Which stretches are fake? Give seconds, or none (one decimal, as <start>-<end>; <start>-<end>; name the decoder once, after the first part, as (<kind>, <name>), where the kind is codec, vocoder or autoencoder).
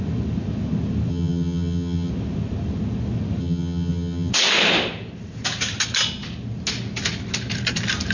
1.1-2.1 (vocoder, HiFi-GAN); 3.4-4.3